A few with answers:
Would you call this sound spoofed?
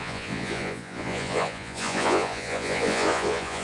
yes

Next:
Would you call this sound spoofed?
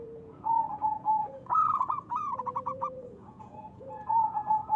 yes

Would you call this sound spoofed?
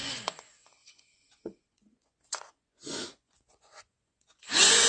yes